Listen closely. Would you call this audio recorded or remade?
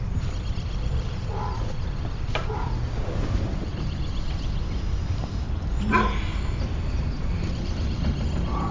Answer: recorded